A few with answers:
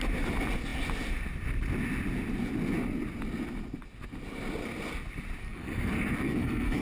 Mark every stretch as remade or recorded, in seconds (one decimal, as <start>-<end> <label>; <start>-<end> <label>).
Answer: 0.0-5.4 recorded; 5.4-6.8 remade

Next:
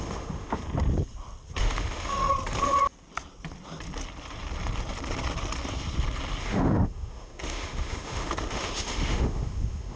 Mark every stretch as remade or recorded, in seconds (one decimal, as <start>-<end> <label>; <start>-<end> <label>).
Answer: 0.0-0.6 remade; 0.6-1.6 recorded; 1.6-2.3 remade; 2.3-6.4 recorded; 6.4-10.0 remade

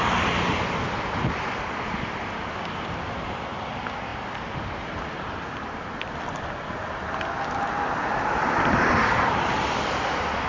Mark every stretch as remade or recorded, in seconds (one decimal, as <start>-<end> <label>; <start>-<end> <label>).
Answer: 0.0-10.5 recorded